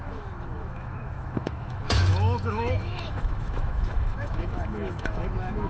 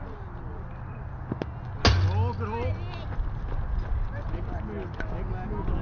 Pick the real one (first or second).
second